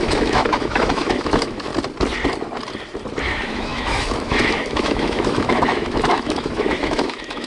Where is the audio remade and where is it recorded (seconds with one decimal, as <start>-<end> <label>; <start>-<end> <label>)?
0.0-1.7 remade; 1.7-3.2 recorded; 3.2-7.5 remade